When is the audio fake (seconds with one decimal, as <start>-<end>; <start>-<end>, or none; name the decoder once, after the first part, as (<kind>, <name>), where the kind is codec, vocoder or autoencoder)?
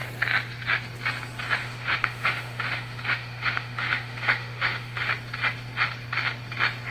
1.6-5.1 (autoencoder, DAC-VAE)